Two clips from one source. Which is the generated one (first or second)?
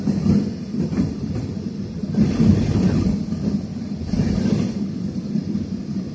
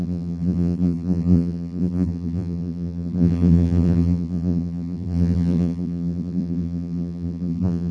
second